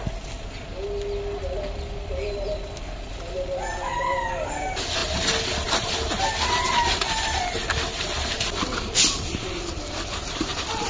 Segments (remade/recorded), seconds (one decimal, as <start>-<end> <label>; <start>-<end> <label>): 0.0-10.9 recorded